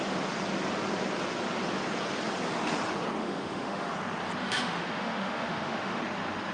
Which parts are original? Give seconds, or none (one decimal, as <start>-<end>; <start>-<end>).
0.0-3.2; 3.9-4.4; 6.0-6.5